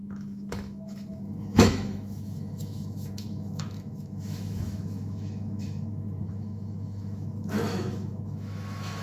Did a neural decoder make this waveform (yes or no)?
yes